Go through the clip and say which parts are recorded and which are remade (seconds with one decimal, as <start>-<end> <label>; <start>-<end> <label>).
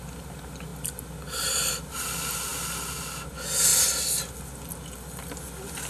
0.0-5.9 recorded